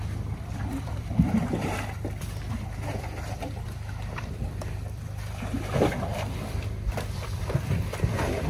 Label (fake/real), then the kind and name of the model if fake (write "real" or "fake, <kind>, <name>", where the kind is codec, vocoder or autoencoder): fake, vocoder, BigVGAN v2